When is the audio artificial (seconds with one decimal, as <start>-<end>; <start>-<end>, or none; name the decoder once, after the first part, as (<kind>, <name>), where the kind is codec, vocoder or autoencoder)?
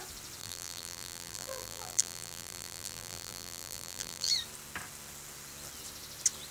0.4-4.3 (vocoder, BigVGAN v2)